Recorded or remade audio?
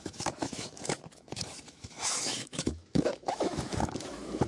remade